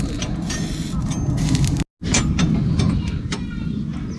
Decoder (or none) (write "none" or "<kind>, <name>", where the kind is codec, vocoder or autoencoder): none